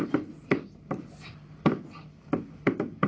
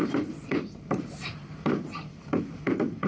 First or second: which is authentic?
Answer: first